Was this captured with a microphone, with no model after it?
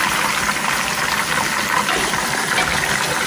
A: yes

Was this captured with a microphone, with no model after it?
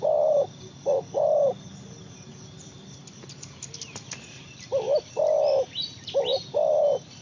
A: no